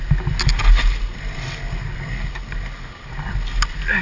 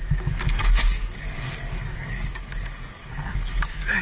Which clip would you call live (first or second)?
first